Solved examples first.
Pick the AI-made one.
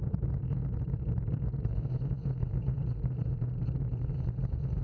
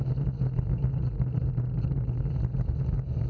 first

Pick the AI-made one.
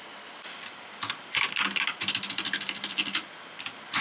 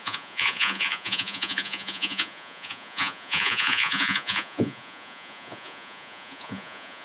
second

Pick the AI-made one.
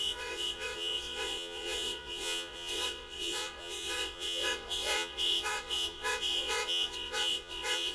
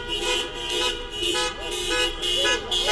first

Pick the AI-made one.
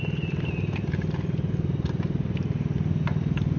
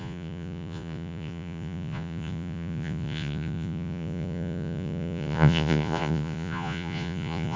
second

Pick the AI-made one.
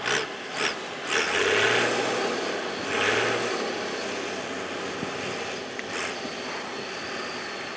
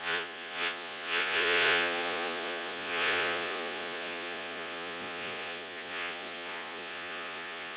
second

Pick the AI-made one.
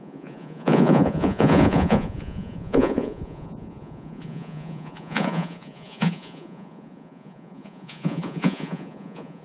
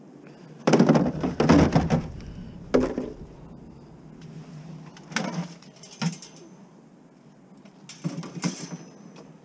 first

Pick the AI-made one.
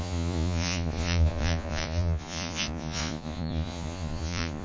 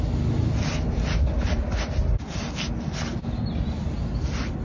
first